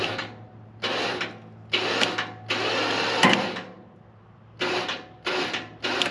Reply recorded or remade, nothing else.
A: recorded